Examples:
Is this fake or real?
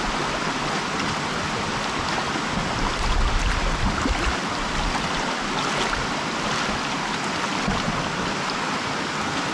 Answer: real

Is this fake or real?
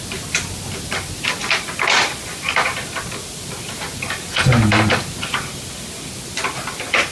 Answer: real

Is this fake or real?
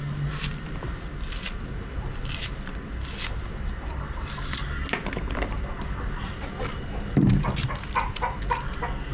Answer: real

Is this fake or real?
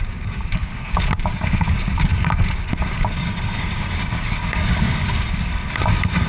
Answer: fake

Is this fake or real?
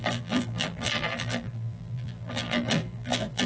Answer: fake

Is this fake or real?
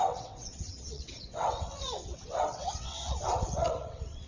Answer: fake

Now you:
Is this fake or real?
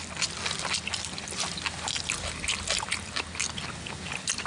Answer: real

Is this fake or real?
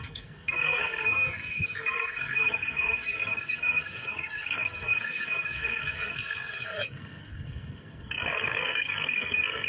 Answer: fake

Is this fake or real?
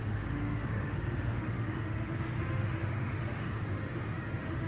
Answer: fake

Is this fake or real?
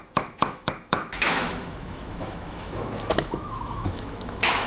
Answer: fake